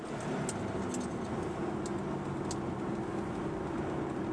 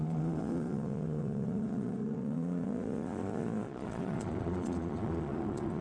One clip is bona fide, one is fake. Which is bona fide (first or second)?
first